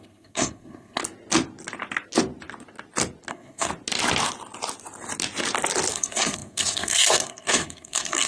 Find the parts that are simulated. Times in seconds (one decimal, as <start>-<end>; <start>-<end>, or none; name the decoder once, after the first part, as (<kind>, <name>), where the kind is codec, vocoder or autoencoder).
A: 0.0-1.0 (codec, SNAC); 3.3-3.7; 5.9-8.3